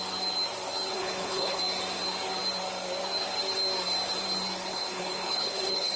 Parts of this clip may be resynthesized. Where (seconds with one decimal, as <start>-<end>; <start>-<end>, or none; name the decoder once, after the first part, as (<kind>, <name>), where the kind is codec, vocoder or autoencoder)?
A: 0.9-1.6 (codec, HILCodec); 4.7-6.0